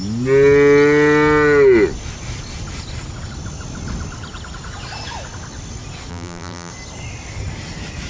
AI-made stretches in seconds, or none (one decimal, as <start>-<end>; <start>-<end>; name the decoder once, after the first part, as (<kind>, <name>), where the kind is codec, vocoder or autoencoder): 6.1-6.7 (vocoder, BigVGAN v2)